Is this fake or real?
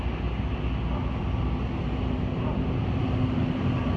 real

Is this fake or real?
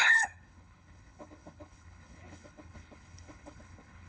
fake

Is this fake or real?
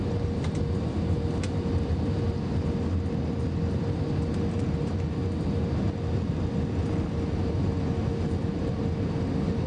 real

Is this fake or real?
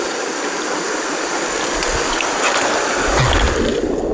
real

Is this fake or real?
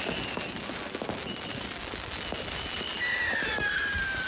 real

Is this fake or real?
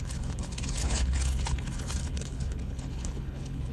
fake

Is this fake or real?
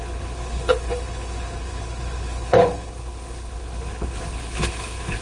fake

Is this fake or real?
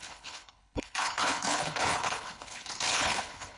fake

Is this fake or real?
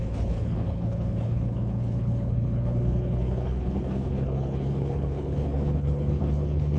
fake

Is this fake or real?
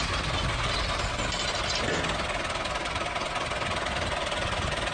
real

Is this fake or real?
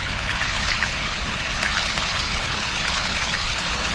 fake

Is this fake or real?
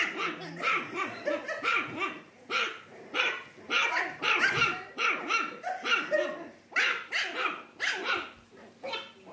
real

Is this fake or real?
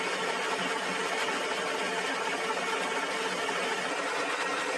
real